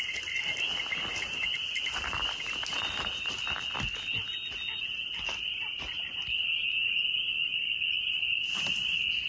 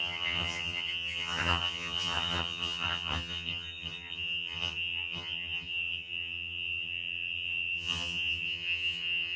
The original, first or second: first